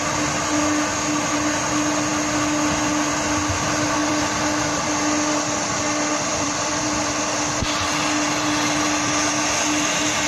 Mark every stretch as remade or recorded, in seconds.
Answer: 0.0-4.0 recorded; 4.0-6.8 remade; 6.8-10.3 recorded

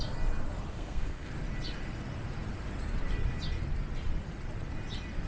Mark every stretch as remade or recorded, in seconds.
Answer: 0.0-0.7 recorded; 0.7-1.3 remade; 1.3-5.3 recorded

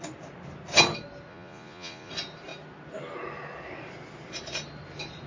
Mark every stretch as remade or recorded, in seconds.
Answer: 0.0-1.3 recorded; 1.3-2.1 remade; 2.1-5.3 recorded

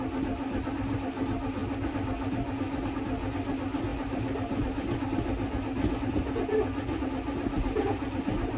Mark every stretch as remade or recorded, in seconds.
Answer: 0.0-8.6 recorded

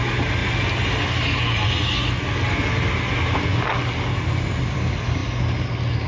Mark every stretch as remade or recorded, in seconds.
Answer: 0.0-6.1 recorded